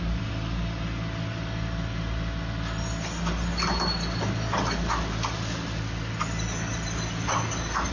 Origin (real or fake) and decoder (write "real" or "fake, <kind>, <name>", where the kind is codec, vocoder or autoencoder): real